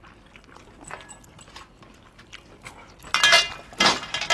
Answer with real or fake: real